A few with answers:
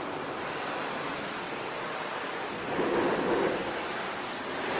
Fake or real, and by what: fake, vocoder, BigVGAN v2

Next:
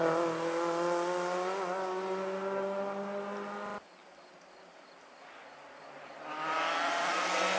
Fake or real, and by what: real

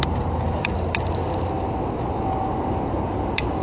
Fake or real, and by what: real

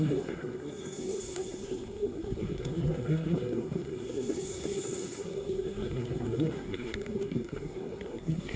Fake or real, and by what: fake, codec, SNAC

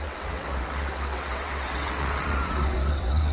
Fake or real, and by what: fake, vocoder, WaveNeXt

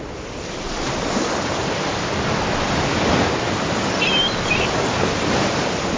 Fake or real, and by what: fake, vocoder, BigVGAN v2